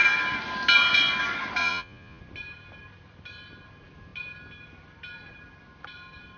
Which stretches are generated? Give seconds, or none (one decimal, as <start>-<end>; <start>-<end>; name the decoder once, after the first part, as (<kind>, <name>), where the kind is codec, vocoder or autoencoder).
1.6-2.2 (vocoder, Vocos)